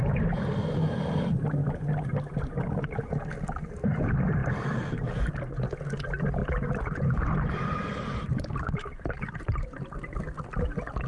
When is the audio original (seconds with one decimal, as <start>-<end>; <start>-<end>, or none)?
0.0-1.6; 3.0-4.4; 5.3-8.3; 9.7-11.1